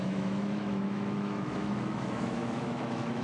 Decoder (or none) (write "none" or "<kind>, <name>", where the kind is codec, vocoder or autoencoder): autoencoder, DAC-VAE